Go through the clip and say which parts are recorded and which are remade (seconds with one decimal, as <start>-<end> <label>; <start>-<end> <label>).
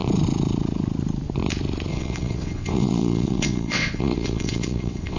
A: 0.0-1.9 recorded; 1.9-5.2 remade